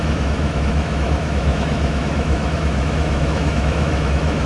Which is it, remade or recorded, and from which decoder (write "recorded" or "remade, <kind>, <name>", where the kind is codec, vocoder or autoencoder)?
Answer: remade, autoencoder, DAC-VAE